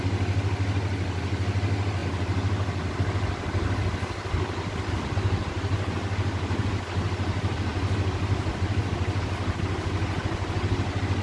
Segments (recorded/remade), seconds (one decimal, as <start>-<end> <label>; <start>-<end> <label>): 0.0-11.2 recorded